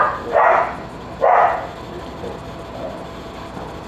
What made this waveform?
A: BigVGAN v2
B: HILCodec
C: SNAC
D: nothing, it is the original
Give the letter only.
D